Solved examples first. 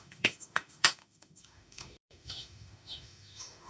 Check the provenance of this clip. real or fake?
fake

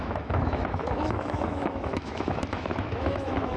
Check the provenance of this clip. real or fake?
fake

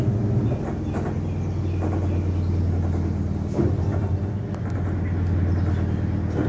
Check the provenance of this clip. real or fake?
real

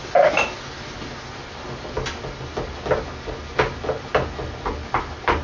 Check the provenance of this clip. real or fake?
real